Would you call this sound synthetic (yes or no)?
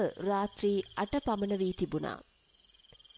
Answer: no